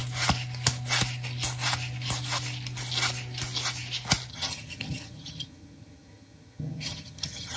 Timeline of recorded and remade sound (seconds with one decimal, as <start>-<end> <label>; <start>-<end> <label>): 0.0-4.3 recorded; 4.3-7.6 remade